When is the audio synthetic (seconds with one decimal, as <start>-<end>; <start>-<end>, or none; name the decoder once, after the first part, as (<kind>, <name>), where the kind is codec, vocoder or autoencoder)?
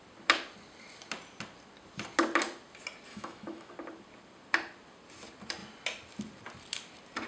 3.1-3.7 (autoencoder, DAC-VAE)